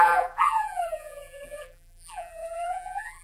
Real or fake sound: fake